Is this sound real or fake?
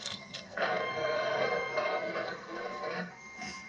fake